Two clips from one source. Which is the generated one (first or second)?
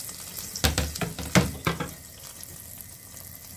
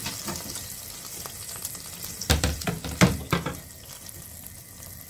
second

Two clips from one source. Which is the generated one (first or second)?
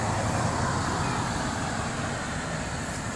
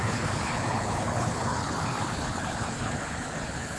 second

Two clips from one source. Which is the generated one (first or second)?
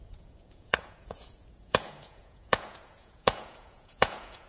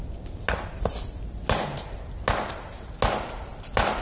first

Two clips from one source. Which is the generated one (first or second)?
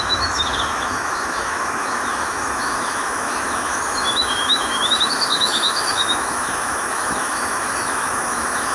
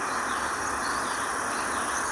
first